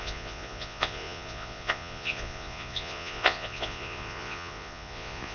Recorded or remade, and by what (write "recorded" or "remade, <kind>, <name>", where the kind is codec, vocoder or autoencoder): remade, vocoder, Vocos